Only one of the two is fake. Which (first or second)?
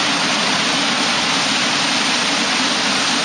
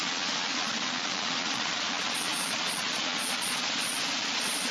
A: second